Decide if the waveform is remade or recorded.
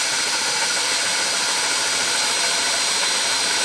recorded